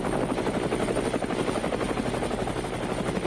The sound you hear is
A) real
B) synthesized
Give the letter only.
A